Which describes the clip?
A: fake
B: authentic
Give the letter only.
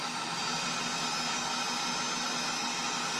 B